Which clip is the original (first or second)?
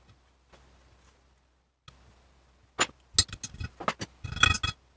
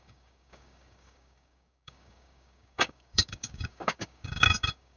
first